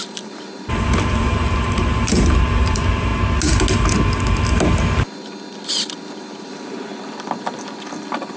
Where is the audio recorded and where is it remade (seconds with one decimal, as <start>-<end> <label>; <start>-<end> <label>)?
0.0-3.1 remade; 3.1-6.2 recorded; 6.2-6.9 remade; 6.9-8.4 recorded